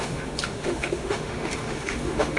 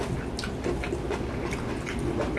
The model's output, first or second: first